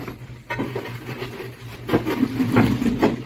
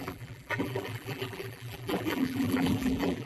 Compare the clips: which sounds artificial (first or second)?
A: second